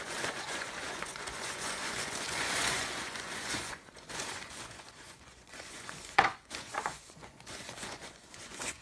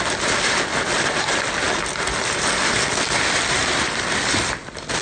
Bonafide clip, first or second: second